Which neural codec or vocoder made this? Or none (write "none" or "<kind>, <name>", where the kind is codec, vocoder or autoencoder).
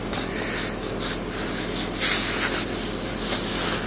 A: none